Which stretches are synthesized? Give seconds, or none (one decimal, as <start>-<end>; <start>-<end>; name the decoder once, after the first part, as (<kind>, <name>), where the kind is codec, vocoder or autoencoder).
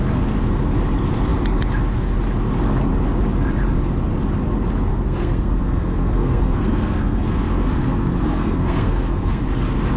4.9-9.4 (codec, SNAC)